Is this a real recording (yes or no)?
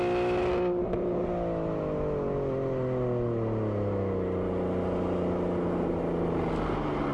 yes